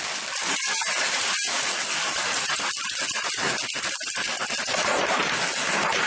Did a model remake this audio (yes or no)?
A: no